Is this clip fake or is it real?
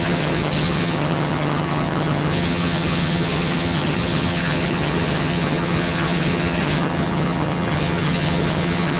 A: fake